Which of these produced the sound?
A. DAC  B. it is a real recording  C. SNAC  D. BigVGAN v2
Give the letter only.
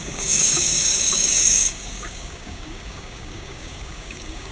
A